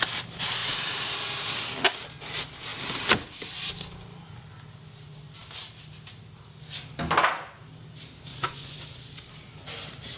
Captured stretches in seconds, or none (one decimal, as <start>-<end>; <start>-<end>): 0.0-8.3; 8.8-10.2